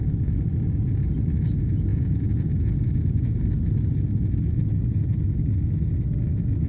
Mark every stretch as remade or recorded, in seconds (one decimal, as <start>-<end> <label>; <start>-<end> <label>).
0.0-1.9 recorded; 1.9-3.4 remade; 3.4-6.7 recorded